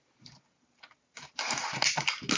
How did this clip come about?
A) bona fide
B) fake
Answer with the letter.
A